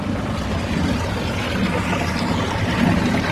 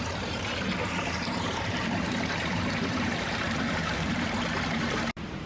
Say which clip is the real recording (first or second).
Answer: first